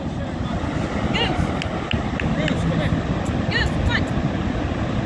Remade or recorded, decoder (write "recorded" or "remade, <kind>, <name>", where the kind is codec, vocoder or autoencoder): recorded